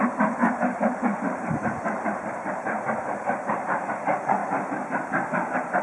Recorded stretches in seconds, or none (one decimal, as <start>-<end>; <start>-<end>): 0.0-0.4; 3.9-4.4